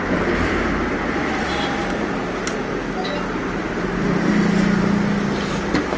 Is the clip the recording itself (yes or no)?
yes